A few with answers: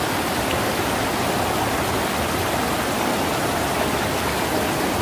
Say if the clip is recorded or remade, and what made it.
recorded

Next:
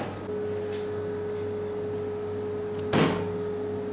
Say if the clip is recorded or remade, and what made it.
recorded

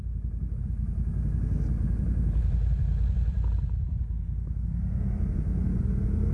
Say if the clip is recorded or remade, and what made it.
recorded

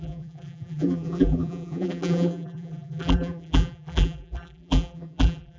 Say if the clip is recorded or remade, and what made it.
remade, vocoder, BigVGAN v2